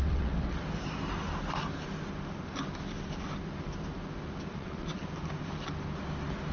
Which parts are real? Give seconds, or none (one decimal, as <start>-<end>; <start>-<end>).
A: 0.6-4.5; 5.0-6.5